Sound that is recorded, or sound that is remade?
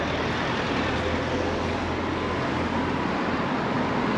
recorded